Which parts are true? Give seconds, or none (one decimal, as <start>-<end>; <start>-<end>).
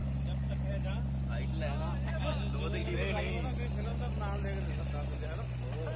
0.0-2.8; 3.3-6.0